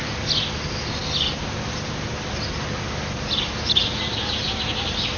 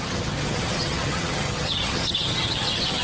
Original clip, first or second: first